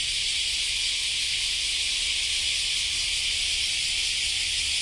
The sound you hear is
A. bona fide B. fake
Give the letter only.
A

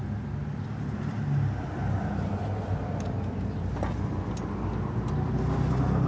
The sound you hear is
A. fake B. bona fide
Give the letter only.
B